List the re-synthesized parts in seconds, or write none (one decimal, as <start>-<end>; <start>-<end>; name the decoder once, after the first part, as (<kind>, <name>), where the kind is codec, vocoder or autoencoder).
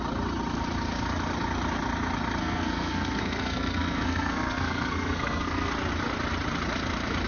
2.4-5.7 (codec, SNAC)